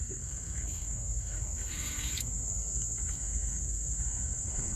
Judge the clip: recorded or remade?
remade